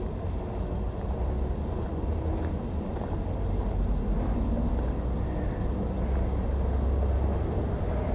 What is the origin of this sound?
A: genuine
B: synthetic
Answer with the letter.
A